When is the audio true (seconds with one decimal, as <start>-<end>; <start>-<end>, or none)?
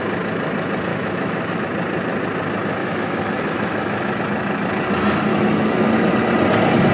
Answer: 0.0-0.9; 1.6-2.8; 4.2-5.3; 5.9-6.9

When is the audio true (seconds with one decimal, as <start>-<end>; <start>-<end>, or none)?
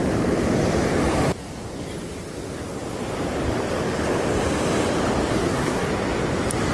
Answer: 0.0-5.3; 5.9-6.7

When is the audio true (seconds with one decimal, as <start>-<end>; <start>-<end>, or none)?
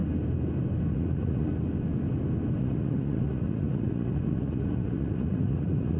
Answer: 0.0-0.9; 1.5-2.6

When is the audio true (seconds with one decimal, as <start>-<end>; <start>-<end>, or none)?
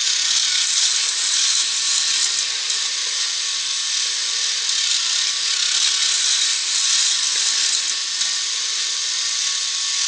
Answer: 0.0-10.1